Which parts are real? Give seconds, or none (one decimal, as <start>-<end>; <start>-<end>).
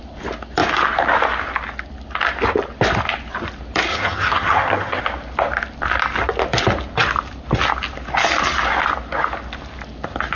0.0-3.9; 5.0-10.3